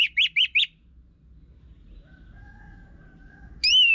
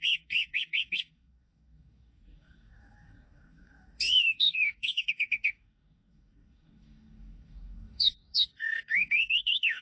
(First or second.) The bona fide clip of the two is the first